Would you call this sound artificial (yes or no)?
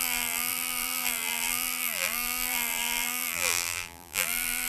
yes